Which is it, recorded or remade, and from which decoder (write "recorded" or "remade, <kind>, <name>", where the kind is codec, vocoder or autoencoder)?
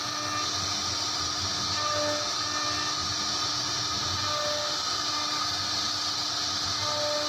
recorded